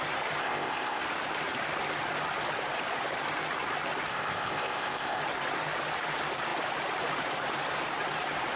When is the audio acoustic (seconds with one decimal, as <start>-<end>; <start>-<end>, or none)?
0.0-0.4; 1.0-4.1; 5.2-8.6